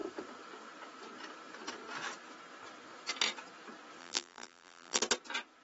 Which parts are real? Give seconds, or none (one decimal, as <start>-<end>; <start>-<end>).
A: 0.0-4.0; 5.0-5.6